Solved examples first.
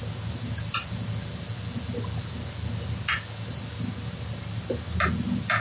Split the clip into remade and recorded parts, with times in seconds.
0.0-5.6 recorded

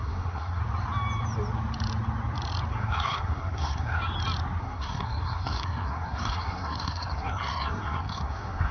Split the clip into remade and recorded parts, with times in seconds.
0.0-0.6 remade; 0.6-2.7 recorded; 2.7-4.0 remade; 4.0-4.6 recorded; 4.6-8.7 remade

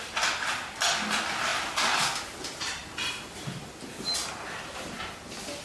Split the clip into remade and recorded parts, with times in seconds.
0.0-5.6 recorded

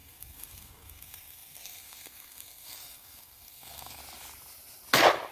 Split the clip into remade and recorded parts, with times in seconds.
0.0-4.0 remade; 4.0-5.3 recorded

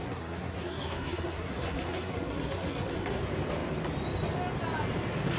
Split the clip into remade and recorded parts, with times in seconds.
0.0-3.2 remade; 3.2-5.4 recorded

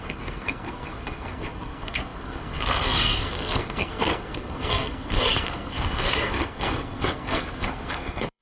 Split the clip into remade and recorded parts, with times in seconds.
0.0-8.4 remade

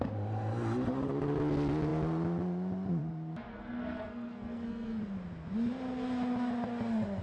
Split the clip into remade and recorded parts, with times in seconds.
0.0-3.5 recorded; 3.5-5.0 remade; 5.0-7.2 recorded

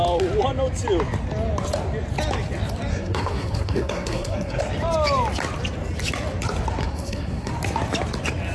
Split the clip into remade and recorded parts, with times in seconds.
0.0-2.9 recorded; 2.9-4.6 remade; 4.6-6.8 recorded; 6.8-7.5 remade; 7.5-8.5 recorded